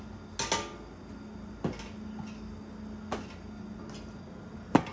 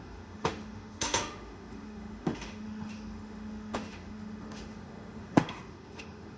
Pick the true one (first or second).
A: first